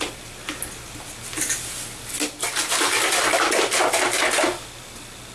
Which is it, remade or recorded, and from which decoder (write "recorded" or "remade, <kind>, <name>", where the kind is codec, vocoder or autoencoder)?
recorded